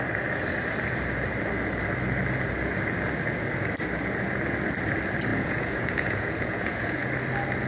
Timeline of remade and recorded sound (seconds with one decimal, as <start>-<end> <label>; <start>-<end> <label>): 0.0-5.3 recorded; 5.3-7.1 remade; 7.1-7.7 recorded